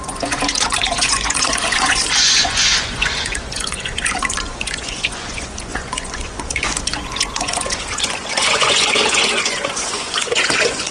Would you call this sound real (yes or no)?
no